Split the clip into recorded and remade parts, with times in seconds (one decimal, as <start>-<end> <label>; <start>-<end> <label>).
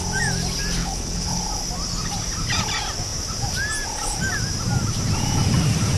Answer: 0.0-0.8 recorded; 0.8-1.4 remade; 1.4-6.0 recorded